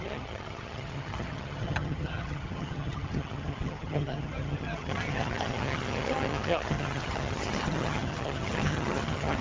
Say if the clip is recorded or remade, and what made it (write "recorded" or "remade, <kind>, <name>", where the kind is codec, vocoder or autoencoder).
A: remade, vocoder, HiFi-GAN